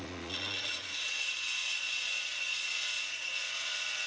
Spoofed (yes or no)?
yes